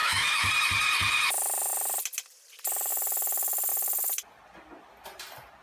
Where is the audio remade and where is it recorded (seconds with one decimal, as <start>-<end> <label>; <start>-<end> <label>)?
0.0-0.5 remade; 0.5-5.6 recorded